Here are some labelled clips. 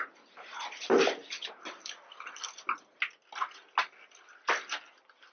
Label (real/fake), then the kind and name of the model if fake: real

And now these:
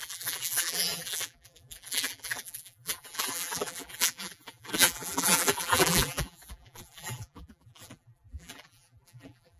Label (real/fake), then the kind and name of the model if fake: fake, vocoder, BigVGAN v2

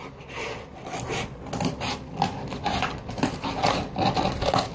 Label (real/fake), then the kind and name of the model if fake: real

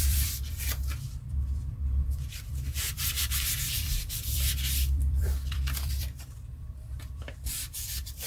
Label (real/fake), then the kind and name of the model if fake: fake, vocoder, BigVGAN v2